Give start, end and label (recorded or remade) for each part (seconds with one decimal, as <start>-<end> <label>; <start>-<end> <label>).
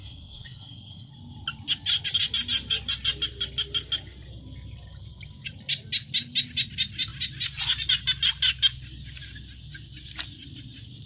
0.0-1.1 remade; 1.1-11.1 recorded